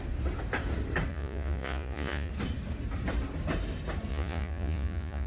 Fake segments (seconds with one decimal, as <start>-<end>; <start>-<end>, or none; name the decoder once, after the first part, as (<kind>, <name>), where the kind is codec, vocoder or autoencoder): 1.1-2.3 (vocoder, Vocos); 4.1-5.3